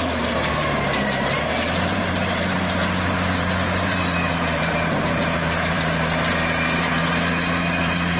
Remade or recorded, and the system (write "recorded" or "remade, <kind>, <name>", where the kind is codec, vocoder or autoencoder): remade, vocoder, BigVGAN v2